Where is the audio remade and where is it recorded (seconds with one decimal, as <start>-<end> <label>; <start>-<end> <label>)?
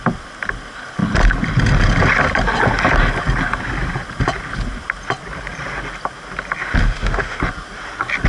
0.0-6.8 recorded; 6.8-7.4 remade; 7.4-8.3 recorded